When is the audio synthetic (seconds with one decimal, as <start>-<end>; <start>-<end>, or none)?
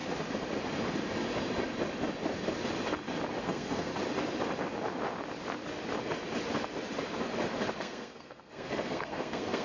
3.4-3.9; 7.8-9.6